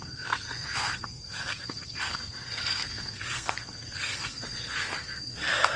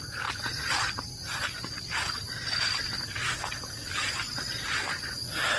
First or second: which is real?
second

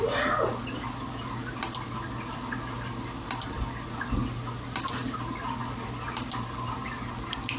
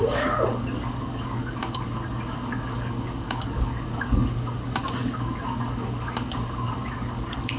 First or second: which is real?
first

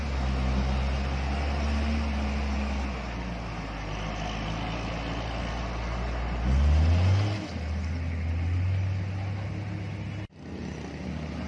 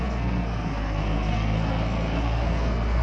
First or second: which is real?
first